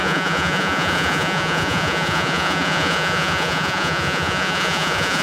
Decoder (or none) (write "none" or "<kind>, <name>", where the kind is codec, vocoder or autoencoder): vocoder, Vocos